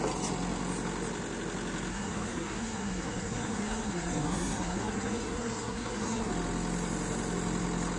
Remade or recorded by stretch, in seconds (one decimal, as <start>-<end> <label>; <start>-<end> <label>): 0.0-1.9 recorded; 1.9-6.3 remade; 6.3-8.0 recorded